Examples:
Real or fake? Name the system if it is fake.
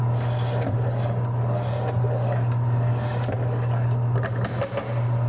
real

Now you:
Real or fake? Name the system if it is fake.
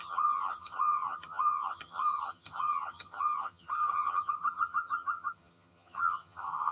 fake, vocoder, HiFi-GAN